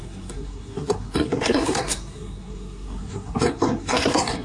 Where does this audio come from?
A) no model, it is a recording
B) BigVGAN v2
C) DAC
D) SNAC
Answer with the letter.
D